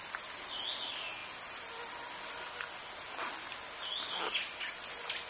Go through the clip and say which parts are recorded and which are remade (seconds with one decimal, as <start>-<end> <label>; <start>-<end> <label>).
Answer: 0.0-5.3 recorded